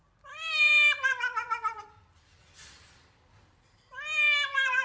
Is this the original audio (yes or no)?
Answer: no